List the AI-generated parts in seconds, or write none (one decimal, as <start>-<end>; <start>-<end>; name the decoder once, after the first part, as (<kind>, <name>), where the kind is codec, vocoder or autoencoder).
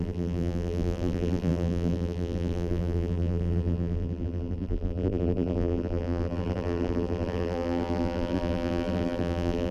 0.0-9.7 (vocoder, BigVGAN v2)